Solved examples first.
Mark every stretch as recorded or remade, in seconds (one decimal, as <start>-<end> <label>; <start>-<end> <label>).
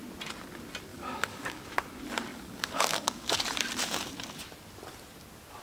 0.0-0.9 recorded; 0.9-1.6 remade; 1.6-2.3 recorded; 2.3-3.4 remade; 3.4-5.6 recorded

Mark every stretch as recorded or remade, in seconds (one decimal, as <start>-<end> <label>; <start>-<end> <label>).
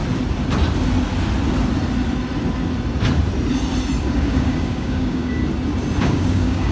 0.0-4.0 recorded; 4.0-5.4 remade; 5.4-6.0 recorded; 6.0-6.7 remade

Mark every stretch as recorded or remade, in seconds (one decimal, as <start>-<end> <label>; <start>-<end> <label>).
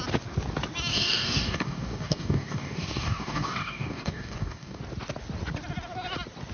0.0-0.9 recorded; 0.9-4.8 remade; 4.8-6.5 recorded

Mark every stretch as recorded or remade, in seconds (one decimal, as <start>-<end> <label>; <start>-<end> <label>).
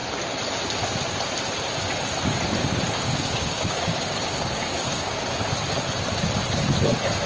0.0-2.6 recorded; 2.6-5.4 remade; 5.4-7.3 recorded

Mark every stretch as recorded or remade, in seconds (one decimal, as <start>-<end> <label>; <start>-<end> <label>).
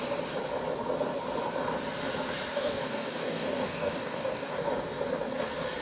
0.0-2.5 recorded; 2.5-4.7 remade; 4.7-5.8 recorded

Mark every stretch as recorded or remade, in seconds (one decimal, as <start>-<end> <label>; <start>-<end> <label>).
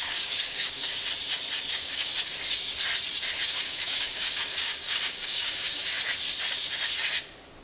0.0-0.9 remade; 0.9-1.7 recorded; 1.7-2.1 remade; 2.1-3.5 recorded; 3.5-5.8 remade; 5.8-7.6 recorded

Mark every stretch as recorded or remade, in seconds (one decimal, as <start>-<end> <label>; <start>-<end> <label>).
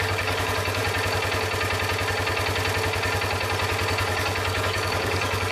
0.0-0.8 remade; 0.8-4.0 recorded; 4.0-5.5 remade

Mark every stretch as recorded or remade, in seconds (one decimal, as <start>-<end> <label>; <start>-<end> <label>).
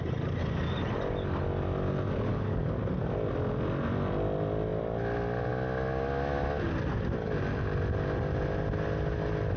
0.0-2.3 recorded; 2.3-2.8 remade; 2.8-9.6 recorded